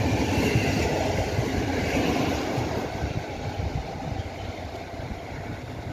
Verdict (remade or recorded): recorded